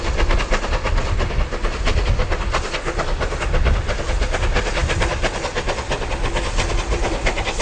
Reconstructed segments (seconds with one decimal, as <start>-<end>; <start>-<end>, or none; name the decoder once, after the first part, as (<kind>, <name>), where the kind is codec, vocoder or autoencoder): none